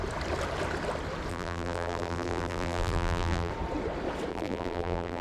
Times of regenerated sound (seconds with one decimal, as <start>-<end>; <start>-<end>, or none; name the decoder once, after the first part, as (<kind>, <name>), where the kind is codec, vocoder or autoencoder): 1.3-3.5 (vocoder, BigVGAN v2); 4.3-5.2